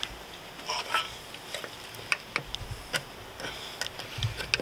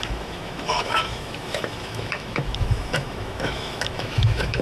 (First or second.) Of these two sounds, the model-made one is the second